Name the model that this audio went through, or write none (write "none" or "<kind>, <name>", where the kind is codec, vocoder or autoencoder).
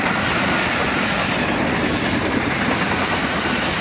none